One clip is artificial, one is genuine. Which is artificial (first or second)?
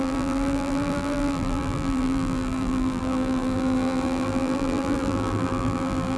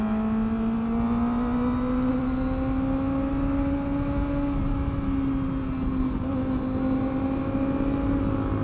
first